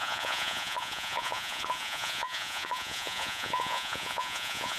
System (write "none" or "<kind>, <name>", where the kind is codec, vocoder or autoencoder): vocoder, Vocos